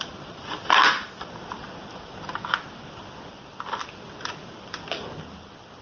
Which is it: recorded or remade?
recorded